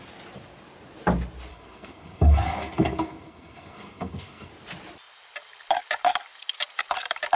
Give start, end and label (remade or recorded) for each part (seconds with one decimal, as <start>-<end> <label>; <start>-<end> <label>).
0.0-1.5 recorded; 1.5-4.5 remade; 4.5-7.4 recorded